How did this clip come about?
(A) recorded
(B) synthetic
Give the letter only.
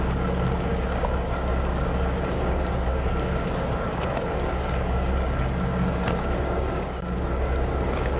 B